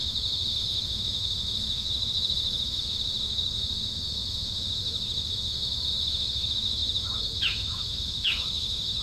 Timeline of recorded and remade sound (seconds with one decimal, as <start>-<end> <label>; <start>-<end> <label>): 0.0-9.0 remade